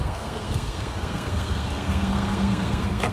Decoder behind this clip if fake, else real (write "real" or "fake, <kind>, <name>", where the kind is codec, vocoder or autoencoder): fake, codec, SNAC